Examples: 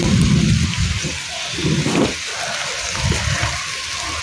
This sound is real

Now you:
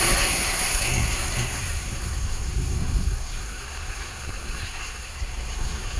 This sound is fake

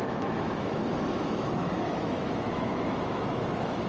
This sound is fake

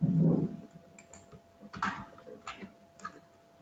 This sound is real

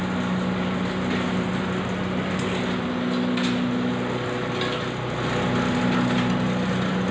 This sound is real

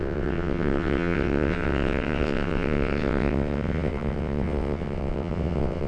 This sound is fake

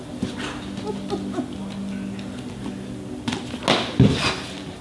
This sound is real